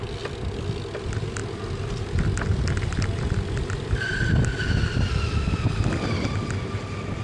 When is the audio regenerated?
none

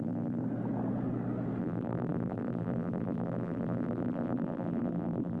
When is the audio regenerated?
0.0-0.4; 1.6-5.4

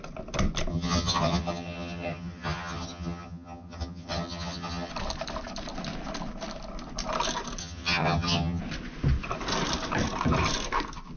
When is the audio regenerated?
0.7-4.9; 7.6-8.6

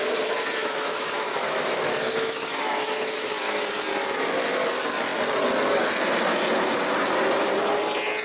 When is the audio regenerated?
0.6-3.4

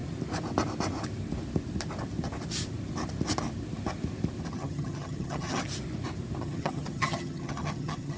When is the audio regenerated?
4.5-5.6; 6.4-8.2

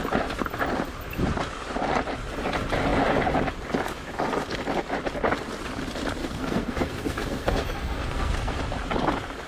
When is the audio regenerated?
6.2-8.6

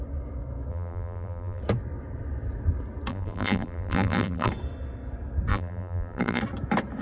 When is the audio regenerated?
0.7-1.6; 3.1-4.5; 5.5-6.4

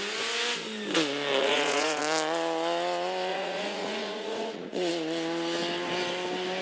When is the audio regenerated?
1.4-2.0; 3.3-4.9